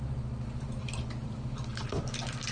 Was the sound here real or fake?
fake